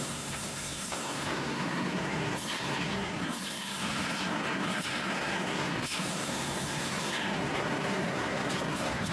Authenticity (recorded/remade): remade